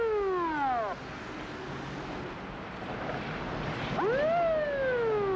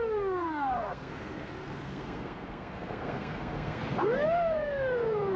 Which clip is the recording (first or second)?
first